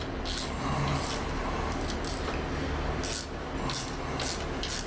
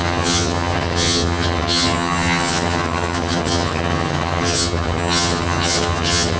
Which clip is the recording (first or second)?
first